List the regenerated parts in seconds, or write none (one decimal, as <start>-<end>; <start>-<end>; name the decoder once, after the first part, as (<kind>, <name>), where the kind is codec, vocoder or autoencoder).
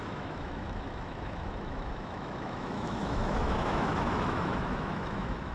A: 0.0-5.5 (autoencoder, DAC-VAE)